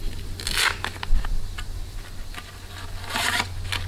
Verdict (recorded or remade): recorded